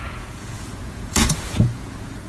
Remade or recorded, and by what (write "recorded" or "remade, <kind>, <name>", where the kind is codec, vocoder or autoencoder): remade, vocoder, Vocos